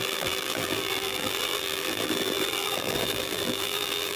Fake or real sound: fake